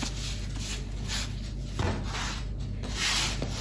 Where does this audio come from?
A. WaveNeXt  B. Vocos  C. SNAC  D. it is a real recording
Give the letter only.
D